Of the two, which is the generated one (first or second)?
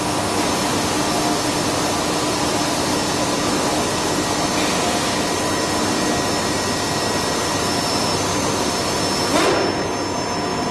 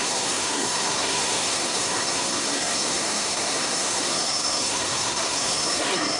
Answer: second